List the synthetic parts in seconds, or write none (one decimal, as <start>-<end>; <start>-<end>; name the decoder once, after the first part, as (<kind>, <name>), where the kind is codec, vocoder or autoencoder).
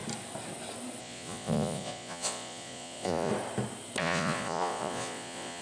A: 1.0-3.3 (vocoder, Vocos); 4.0-5.6